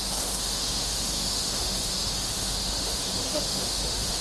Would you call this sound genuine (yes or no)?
no